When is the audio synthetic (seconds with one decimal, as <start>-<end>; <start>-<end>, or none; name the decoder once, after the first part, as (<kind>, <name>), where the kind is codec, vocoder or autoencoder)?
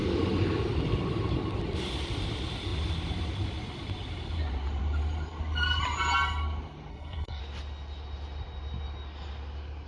6.9-7.4 (codec, SNAC)